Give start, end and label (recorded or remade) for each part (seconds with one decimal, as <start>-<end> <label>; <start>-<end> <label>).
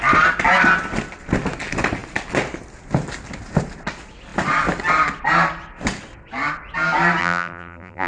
0.0-7.2 recorded; 7.2-8.1 remade